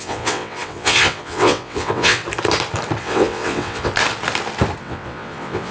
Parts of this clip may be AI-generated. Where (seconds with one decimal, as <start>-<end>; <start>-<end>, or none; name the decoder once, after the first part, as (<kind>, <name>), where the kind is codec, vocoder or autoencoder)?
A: 0.0-2.2 (vocoder, WaveNeXt); 3.0-3.9; 4.8-5.7